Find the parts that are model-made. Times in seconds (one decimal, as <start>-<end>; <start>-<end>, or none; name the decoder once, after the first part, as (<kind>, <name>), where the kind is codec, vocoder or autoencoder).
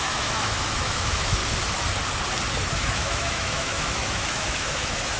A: 0.0-1.4 (autoencoder, DAC-VAE); 2.7-5.2